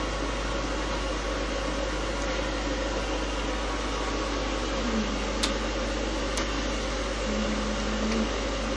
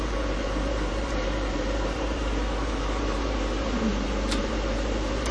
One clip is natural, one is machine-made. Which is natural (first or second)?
first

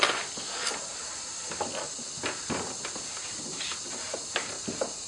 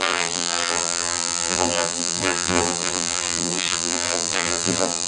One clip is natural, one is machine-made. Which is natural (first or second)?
first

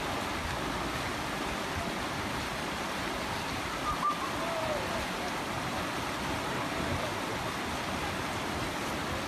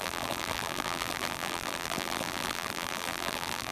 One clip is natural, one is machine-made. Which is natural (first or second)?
first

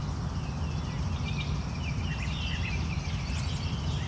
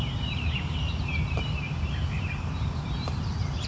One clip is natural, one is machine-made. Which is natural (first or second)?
first